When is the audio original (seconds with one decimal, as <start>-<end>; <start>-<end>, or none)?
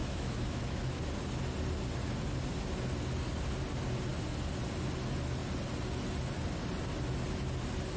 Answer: 1.0-8.0